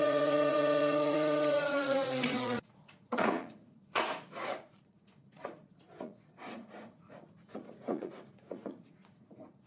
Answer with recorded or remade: remade